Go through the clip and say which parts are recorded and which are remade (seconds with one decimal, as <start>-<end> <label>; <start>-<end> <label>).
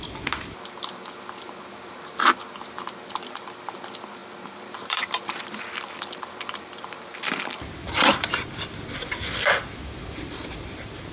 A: 0.0-4.2 recorded; 4.2-9.0 remade; 9.0-11.1 recorded